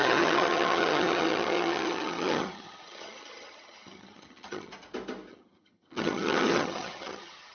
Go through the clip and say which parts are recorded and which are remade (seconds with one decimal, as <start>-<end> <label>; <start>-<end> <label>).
0.0-4.7 remade; 4.7-5.3 recorded; 5.3-7.5 remade